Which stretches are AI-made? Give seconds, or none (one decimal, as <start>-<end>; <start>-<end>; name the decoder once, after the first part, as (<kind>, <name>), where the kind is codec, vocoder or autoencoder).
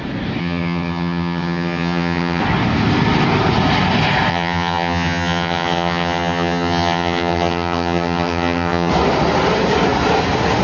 0.4-2.4 (vocoder, HiFi-GAN); 4.3-8.9